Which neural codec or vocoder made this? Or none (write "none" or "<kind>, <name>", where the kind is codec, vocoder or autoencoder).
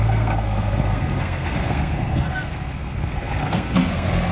codec, SNAC